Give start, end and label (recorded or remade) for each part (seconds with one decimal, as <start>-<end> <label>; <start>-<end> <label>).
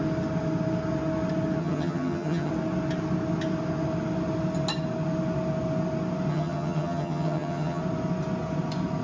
0.0-1.6 recorded; 1.6-2.5 remade; 2.5-6.3 recorded; 6.3-7.8 remade; 7.8-9.0 recorded